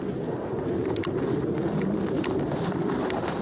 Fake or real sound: real